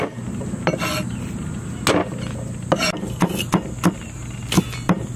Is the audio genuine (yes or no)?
yes